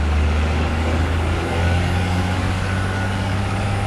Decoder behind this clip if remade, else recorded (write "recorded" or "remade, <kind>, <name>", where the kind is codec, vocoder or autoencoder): remade, codec, DAC